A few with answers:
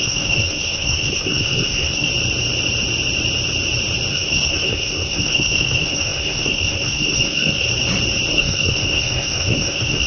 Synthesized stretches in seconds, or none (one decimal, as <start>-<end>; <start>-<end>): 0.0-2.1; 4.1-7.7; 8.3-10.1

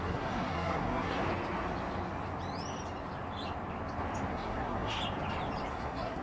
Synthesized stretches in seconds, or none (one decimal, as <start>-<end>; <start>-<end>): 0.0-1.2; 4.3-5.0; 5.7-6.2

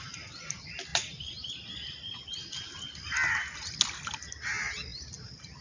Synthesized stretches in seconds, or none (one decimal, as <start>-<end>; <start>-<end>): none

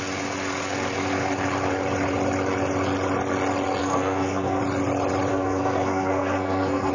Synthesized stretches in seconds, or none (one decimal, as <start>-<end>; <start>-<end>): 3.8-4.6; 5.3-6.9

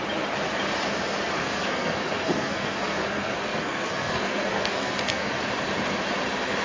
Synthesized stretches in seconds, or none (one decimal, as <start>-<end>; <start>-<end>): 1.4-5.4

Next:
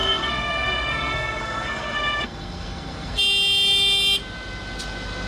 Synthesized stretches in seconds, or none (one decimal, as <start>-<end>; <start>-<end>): 0.0-3.2